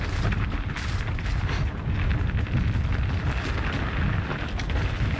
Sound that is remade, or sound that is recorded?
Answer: recorded